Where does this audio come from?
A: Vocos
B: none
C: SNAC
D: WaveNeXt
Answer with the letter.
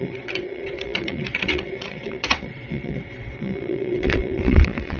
D